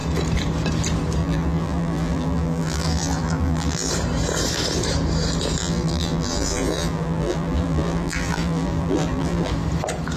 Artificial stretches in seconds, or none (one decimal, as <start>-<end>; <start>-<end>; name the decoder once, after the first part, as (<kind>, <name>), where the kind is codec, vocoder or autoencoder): 1.2-3.9 (vocoder, BigVGAN v2); 5.6-9.5

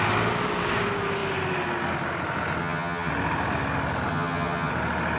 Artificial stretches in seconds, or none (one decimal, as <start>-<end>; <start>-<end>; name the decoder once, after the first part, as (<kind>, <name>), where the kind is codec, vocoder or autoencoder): 2.6-3.1 (vocoder, HiFi-GAN); 4.1-4.7

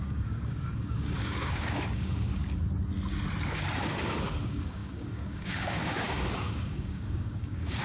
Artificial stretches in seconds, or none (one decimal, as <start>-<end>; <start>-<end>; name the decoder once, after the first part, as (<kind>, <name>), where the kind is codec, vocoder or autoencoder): 0.0-2.4 (codec, DAC); 3.8-7.8

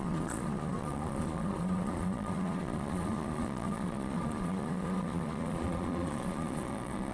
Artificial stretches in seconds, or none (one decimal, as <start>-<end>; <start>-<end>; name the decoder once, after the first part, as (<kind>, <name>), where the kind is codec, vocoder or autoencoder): 0.0-7.1 (vocoder, Vocos)

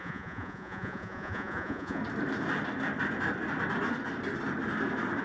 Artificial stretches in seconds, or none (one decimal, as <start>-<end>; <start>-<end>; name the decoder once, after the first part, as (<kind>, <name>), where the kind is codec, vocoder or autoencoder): 0.0-2.0 (vocoder, Vocos)

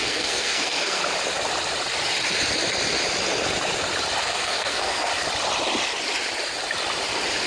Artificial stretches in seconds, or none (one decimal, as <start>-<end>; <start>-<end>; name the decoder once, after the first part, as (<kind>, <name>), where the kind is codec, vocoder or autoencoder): 0.0-1.0 (codec, SNAC); 4.2-5.1

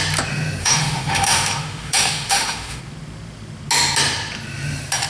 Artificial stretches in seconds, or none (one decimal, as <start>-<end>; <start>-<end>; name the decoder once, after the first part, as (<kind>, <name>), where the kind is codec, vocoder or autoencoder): 0.6-2.8 (autoencoder, DAC-VAE)

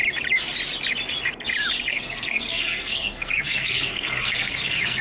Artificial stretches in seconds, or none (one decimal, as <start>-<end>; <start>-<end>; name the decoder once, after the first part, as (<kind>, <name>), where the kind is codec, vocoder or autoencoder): 1.9-5.0 (codec, SNAC)